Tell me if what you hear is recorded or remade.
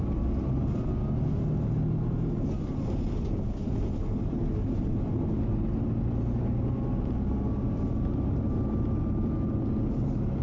recorded